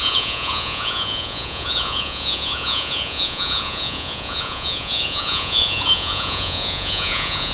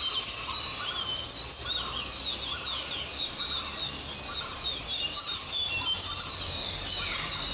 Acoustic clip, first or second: second